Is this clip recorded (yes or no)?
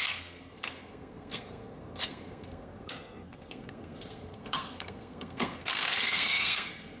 no